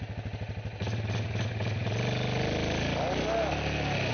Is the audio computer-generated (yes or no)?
no